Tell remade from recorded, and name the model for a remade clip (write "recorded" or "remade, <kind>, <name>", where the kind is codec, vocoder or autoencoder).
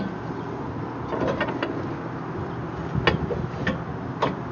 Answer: recorded